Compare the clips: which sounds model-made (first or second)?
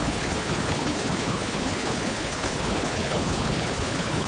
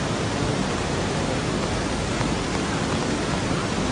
first